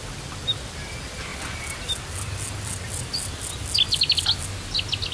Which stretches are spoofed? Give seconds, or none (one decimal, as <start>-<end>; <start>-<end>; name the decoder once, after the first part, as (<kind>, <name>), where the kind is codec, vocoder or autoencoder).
none